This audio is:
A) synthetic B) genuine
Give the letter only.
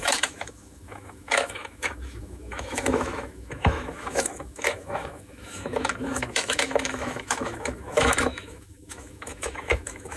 A